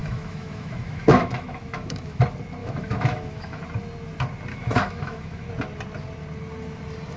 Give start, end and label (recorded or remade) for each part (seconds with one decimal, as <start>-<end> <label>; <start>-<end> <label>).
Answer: 0.0-2.2 remade; 2.2-2.6 recorded; 2.6-3.6 remade; 3.6-4.5 recorded; 4.5-5.5 remade; 5.5-7.2 recorded